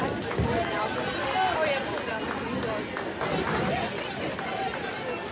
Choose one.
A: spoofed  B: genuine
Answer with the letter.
B